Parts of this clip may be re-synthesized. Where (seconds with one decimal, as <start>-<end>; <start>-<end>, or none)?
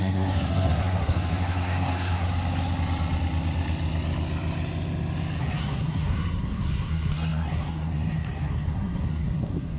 0.0-2.3; 5.4-9.8